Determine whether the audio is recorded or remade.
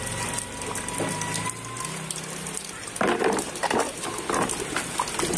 recorded